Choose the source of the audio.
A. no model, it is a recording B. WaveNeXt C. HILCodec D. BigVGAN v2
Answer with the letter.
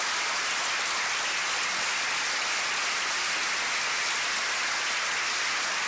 A